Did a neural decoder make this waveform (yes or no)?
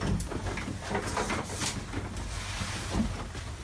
no